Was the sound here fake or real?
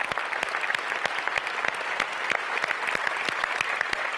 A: real